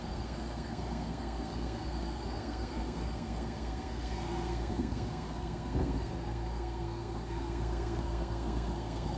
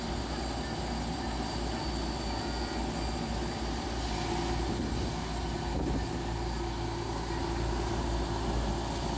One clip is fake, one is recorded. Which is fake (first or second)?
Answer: first